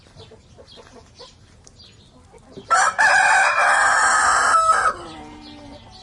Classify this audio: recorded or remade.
recorded